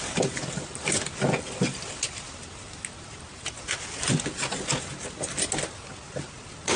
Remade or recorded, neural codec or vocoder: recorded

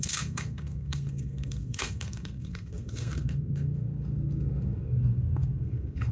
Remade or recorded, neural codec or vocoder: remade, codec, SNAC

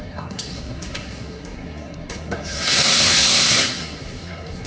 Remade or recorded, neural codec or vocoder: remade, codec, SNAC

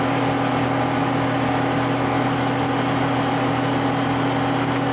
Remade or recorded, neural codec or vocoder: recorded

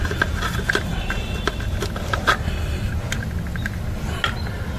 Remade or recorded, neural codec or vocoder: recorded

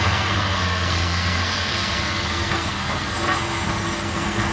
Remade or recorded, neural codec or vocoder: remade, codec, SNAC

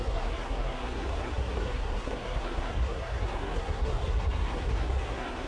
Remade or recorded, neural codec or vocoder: remade, codec, SNAC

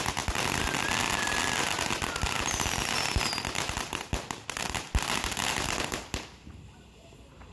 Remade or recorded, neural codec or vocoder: recorded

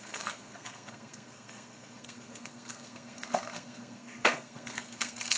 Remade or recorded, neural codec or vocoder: remade, codec, SNAC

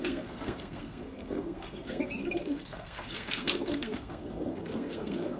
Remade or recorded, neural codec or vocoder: remade, codec, SNAC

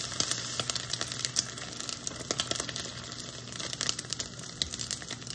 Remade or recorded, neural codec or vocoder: recorded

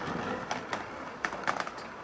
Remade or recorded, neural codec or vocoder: recorded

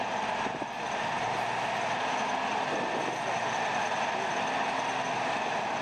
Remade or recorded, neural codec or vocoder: recorded